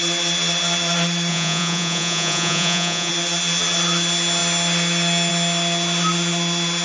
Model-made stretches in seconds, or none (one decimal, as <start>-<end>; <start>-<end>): 1.3-3.1